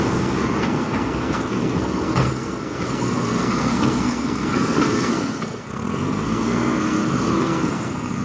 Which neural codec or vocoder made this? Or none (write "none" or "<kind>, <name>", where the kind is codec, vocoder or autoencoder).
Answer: codec, SNAC